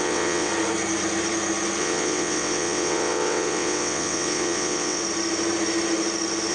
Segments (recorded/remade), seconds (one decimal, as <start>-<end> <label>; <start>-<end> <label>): 0.0-0.5 remade; 0.5-1.8 recorded; 1.8-5.0 remade; 5.0-6.5 recorded